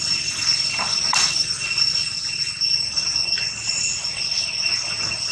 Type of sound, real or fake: real